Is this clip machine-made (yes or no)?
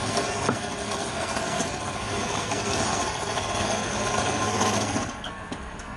yes